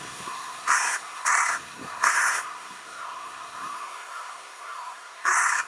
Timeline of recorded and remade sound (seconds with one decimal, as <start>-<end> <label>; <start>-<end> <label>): 0.0-5.7 remade